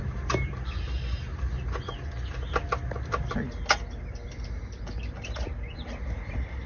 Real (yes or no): yes